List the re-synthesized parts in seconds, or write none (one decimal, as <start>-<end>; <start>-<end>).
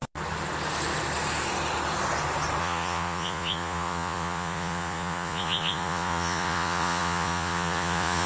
2.6-8.3